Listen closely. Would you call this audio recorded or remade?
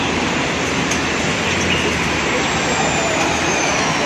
recorded